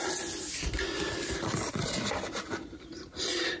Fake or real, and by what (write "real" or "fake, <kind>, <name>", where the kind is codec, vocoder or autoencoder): real